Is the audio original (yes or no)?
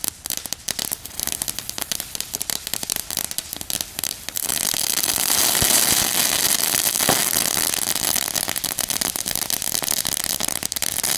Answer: no